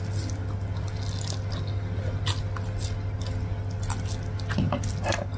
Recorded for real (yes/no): yes